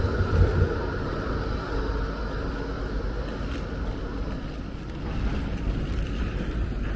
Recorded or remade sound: recorded